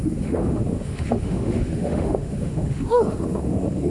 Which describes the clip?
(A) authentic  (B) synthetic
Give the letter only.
B